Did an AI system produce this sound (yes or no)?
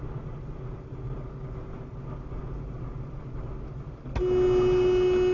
no